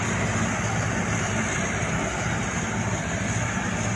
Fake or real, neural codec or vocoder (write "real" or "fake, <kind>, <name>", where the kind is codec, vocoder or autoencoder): real